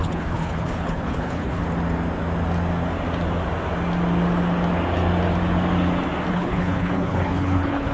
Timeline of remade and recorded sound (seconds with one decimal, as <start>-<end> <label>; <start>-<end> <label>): 0.0-1.6 remade; 1.6-6.3 recorded; 6.3-7.9 remade